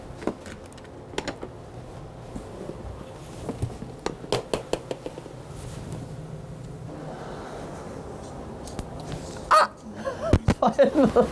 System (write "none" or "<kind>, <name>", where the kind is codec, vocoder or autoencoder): none